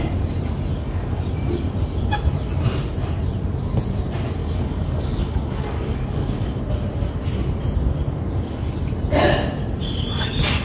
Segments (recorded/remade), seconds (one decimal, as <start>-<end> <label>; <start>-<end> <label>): 0.0-0.7 recorded; 0.7-1.2 remade; 1.2-4.4 recorded; 4.4-6.6 remade; 6.6-10.6 recorded